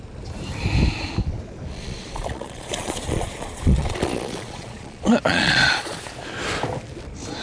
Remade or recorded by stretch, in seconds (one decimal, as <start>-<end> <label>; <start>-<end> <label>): 0.0-1.7 recorded; 1.7-6.1 remade; 6.1-7.4 recorded